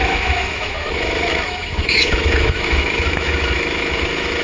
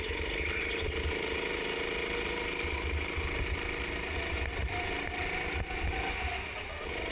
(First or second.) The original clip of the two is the second